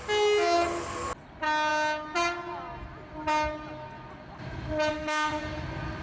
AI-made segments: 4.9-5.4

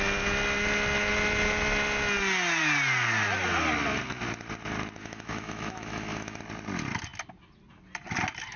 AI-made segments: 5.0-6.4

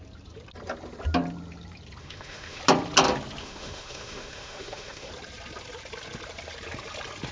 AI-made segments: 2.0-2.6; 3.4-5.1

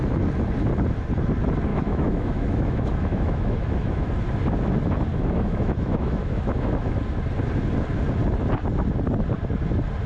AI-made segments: 1.7-4.1; 5.1-7.0

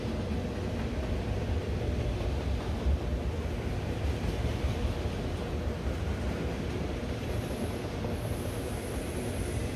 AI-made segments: none

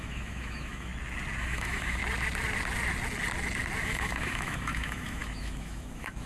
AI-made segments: 0.0-0.9; 1.4-2.0; 3.8-6.3